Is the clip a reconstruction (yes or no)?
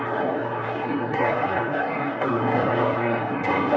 yes